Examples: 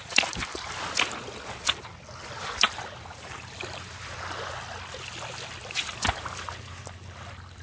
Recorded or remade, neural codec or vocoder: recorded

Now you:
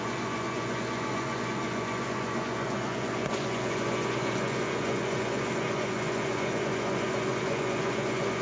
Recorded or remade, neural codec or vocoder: remade, vocoder, Vocos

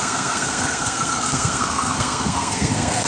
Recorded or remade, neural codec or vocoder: remade, codec, SNAC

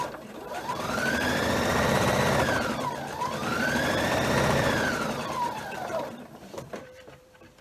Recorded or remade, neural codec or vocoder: remade, vocoder, BigVGAN v2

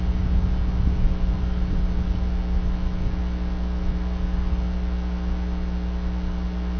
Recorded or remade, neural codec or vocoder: recorded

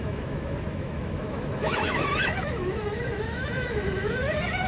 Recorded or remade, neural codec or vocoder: remade, autoencoder, DAC-VAE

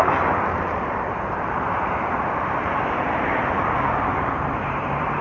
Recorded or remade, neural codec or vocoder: remade, vocoder, BigVGAN v2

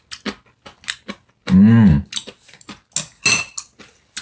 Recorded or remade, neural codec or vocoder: recorded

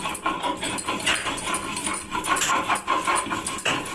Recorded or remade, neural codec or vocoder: recorded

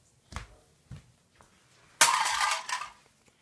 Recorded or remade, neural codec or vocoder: recorded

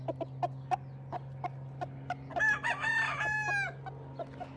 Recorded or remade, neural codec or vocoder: recorded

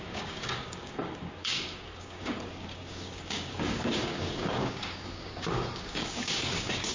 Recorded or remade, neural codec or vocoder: remade, codec, DAC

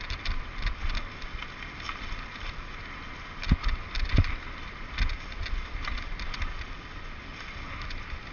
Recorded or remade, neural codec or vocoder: recorded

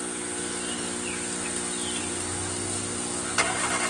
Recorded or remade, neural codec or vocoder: recorded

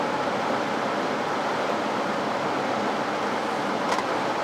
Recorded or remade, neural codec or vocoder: remade, vocoder, BigVGAN v2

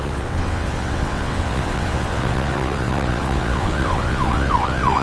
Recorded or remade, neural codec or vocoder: remade, vocoder, WaveNeXt